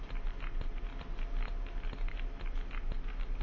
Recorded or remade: recorded